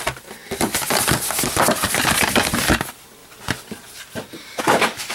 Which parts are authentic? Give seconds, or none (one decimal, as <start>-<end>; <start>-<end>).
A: 3.2-4.6

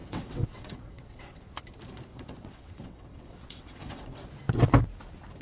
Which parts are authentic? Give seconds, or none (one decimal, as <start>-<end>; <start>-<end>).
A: 1.4-2.1; 4.3-5.4